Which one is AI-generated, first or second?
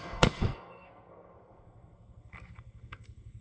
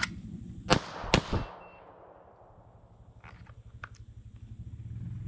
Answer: first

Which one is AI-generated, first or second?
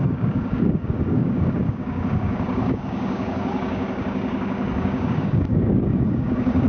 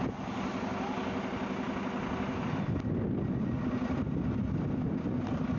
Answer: first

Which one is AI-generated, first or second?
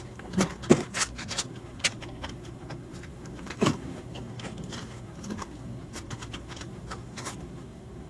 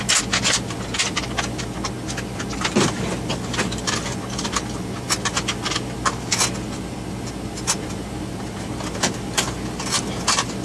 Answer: first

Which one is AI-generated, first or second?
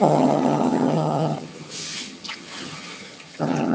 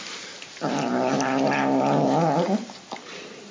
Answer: first